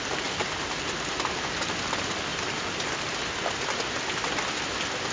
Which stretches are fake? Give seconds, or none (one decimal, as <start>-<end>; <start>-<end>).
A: none